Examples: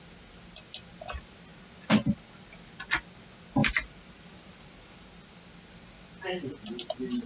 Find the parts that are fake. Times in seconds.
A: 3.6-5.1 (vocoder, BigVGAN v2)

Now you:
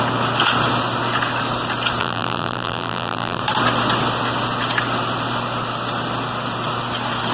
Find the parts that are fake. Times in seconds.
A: 2.0-3.4 (vocoder, BigVGAN v2)

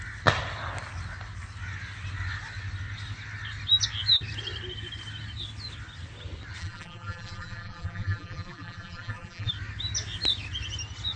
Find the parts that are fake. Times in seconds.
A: 6.6-9.5 (vocoder, BigVGAN v2)

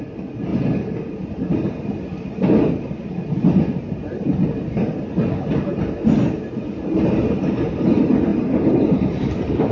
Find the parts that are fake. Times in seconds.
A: 0.5-1.9 (vocoder, BigVGAN v2); 8.3-9.7

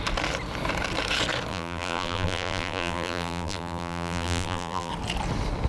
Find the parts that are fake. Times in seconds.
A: 1.5-4.9 (vocoder, BigVGAN v2)

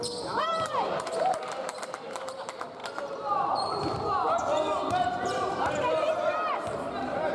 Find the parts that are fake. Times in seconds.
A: 0.0-7.3 (vocoder, BigVGAN v2)

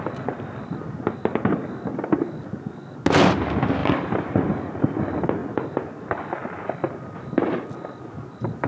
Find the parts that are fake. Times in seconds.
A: 3.8-4.6 (vocoder, BigVGAN v2)